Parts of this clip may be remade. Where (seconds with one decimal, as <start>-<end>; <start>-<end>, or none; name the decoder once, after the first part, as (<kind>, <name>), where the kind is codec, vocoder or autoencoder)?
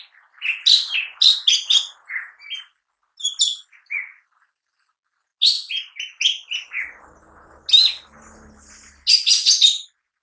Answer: none